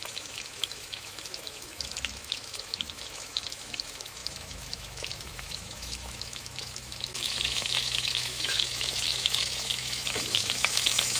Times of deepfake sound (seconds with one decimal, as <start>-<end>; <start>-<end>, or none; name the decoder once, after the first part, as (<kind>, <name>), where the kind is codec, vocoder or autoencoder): 0.0-11.2 (autoencoder, DAC-VAE)